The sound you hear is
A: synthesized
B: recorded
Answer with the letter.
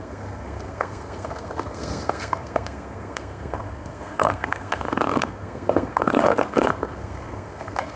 A